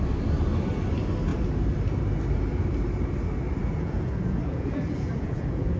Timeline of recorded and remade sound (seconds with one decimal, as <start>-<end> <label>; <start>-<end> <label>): 0.0-3.6 recorded; 3.6-5.8 remade